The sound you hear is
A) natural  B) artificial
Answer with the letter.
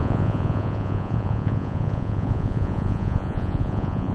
B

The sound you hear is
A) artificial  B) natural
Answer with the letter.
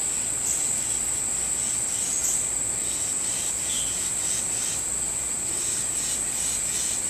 B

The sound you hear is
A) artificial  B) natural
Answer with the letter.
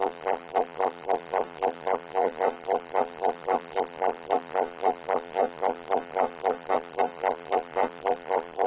A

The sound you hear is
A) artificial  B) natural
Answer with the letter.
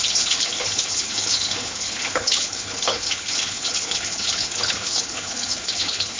A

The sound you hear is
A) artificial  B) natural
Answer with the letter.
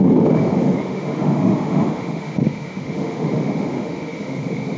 A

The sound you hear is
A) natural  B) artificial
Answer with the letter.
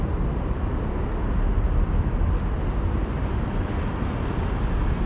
A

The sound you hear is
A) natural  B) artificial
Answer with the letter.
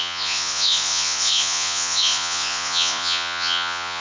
B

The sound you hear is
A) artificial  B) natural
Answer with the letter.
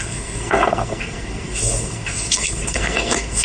A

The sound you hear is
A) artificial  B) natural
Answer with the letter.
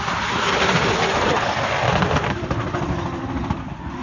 B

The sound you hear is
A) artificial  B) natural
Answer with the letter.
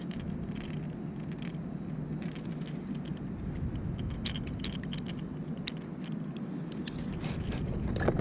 B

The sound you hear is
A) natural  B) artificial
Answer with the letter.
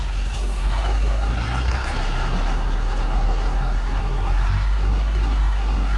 B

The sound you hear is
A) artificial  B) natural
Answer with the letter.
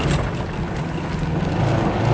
B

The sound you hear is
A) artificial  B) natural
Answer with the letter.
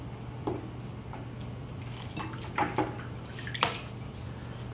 B